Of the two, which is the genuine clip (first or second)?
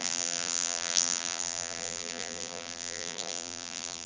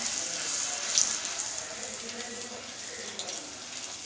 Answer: second